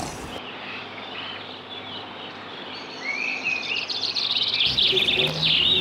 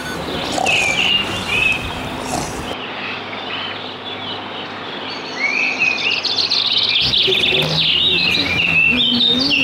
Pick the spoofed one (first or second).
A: first